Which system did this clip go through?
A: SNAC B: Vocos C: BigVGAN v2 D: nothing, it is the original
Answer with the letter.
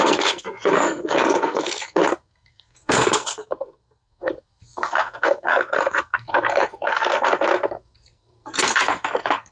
A